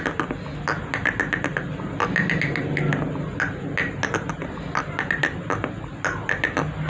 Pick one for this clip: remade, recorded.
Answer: recorded